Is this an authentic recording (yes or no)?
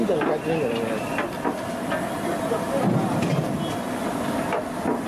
yes